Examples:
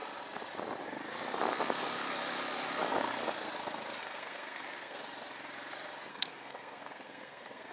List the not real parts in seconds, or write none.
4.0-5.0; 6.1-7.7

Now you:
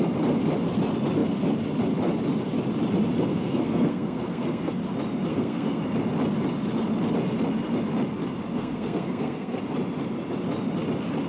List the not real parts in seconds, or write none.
3.3-4.7; 5.3-5.8; 8.5-9.6

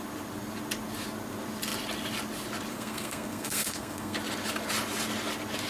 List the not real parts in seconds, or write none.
2.7-4.2

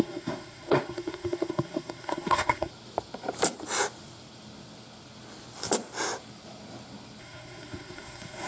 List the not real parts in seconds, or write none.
0.0-2.7; 7.2-8.5

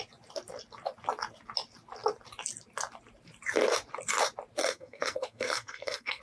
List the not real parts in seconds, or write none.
4.6-6.2

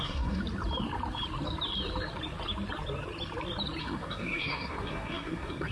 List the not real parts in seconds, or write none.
0.0-0.4; 3.8-5.7

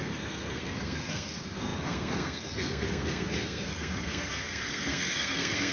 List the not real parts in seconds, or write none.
0.0-5.7